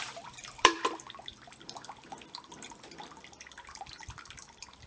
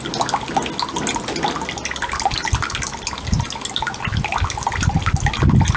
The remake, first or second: first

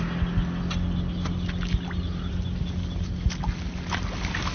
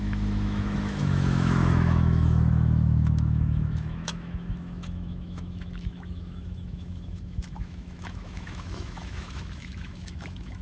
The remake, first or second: second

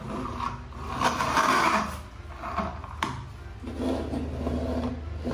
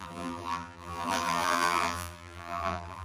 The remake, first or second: second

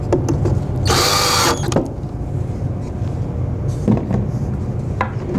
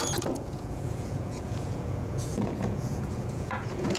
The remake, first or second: second